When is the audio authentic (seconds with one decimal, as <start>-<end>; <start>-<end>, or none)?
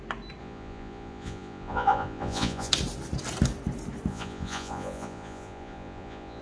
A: 0.0-0.4; 2.7-4.1